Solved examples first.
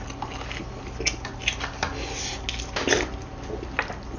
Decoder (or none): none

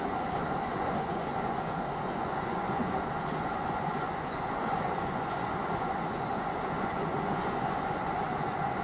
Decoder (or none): vocoder, Vocos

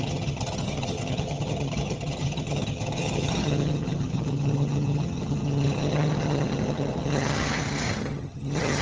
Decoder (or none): vocoder, HiFi-GAN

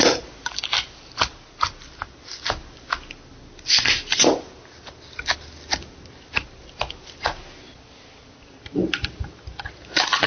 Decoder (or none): none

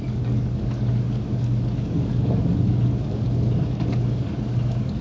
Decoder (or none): codec, DAC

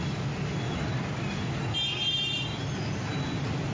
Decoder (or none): none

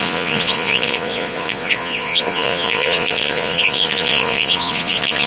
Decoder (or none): vocoder, Vocos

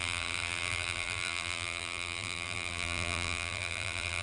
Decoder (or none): vocoder, BigVGAN v2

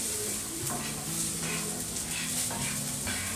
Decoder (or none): none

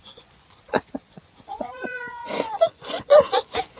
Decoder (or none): vocoder, Vocos